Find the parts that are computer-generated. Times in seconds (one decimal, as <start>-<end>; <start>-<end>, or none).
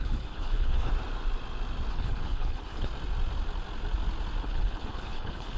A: 0.0-0.9; 1.9-2.9; 4.4-5.6